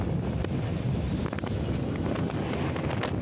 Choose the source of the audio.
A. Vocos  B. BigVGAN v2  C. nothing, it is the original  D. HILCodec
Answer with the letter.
C